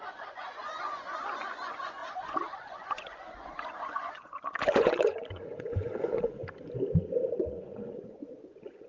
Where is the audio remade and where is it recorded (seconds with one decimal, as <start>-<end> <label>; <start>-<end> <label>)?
0.0-6.4 remade; 6.4-7.4 recorded; 7.4-8.9 remade